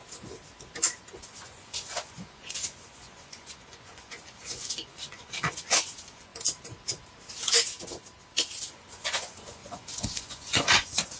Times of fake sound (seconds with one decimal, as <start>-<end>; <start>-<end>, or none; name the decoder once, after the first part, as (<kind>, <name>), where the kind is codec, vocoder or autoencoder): 1.1-6.3 (vocoder, Vocos); 8.7-11.2